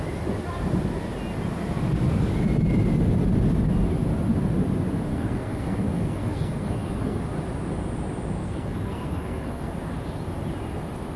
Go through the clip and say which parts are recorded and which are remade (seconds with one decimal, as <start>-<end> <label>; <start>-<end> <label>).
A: 0.0-5.1 recorded; 5.1-7.2 remade; 7.2-8.4 recorded; 8.4-9.7 remade; 9.7-11.2 recorded